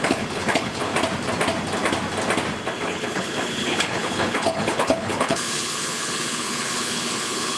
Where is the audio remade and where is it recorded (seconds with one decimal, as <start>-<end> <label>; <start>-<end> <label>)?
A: 0.0-0.9 remade; 0.9-2.8 recorded; 2.8-7.6 remade